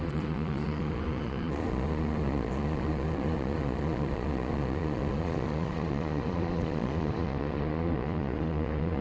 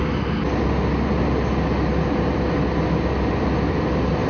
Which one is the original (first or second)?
second